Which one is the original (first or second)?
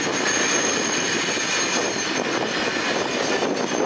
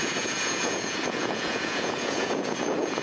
first